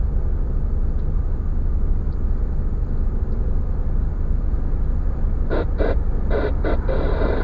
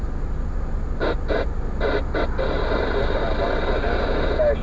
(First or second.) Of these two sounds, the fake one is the first